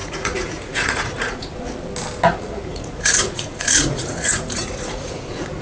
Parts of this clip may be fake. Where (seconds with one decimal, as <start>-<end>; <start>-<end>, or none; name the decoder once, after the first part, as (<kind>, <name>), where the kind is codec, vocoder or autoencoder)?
0.0-1.5 (vocoder, Vocos); 2.7-5.6